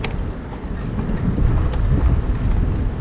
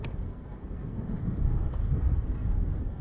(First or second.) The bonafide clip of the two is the first